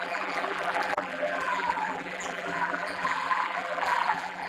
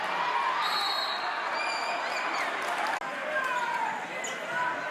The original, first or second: second